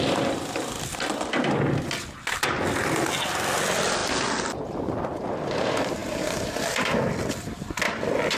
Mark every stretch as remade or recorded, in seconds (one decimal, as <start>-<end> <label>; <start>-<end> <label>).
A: 0.0-8.4 recorded

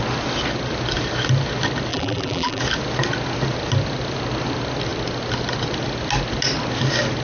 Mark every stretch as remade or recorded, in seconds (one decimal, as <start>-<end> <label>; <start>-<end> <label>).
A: 0.0-1.9 recorded; 1.9-2.6 remade; 2.6-7.2 recorded

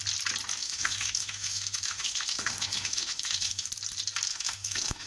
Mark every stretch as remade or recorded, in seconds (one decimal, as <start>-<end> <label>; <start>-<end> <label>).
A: 0.0-0.6 recorded; 0.6-3.7 remade; 3.7-4.3 recorded; 4.3-5.1 remade

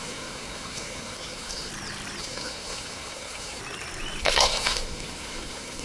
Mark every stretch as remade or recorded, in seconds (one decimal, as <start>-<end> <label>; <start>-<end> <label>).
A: 0.0-1.7 remade; 1.7-2.2 recorded; 2.2-3.6 remade; 3.6-4.2 recorded; 4.2-5.8 remade

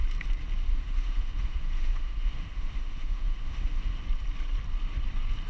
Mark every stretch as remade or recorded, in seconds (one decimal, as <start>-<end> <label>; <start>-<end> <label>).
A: 0.0-0.7 recorded; 0.7-4.0 remade; 4.0-5.5 recorded

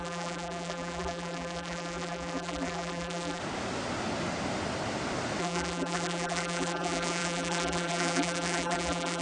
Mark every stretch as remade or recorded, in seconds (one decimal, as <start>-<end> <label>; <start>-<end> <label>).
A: 0.0-3.4 remade; 3.4-5.4 recorded; 5.4-9.2 remade

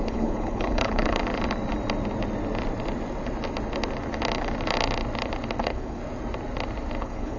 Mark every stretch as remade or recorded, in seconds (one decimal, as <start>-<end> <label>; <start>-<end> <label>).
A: 0.0-1.2 remade; 1.2-5.6 recorded; 5.6-6.0 remade; 6.0-7.0 recorded; 7.0-7.4 remade

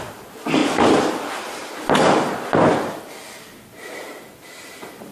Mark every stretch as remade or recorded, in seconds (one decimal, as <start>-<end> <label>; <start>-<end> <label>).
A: 0.0-5.1 recorded